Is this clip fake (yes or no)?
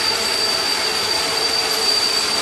no